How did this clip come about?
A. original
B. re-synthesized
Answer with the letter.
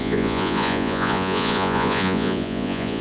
B